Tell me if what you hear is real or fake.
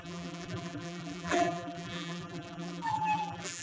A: fake